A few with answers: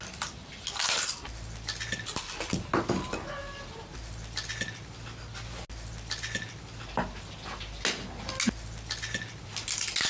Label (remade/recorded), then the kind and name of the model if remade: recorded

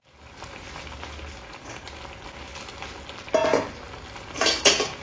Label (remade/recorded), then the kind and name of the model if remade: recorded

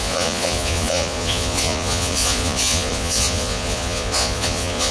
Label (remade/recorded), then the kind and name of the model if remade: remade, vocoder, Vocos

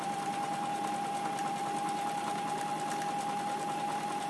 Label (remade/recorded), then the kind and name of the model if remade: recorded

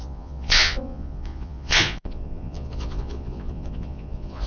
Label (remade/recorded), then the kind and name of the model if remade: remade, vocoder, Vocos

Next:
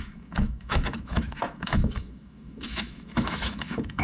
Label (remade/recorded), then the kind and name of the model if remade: remade, autoencoder, DAC-VAE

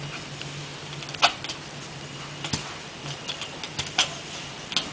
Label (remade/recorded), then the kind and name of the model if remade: recorded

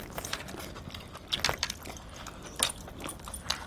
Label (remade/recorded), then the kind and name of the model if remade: remade, vocoder, BigVGAN v2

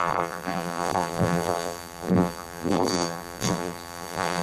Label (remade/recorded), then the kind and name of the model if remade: remade, vocoder, BigVGAN v2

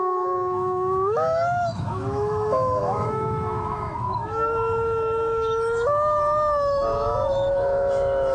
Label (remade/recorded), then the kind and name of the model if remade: remade, autoencoder, DAC-VAE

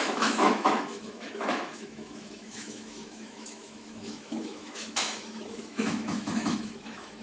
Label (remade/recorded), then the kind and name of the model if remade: remade, autoencoder, DAC-VAE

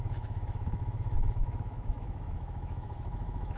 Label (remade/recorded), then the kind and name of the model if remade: remade, autoencoder, DAC-VAE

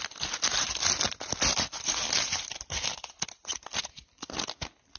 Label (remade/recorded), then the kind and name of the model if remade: recorded